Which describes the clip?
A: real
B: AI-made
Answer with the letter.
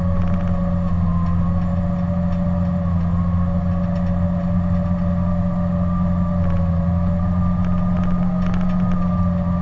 A